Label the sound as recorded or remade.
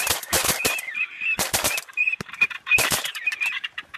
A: remade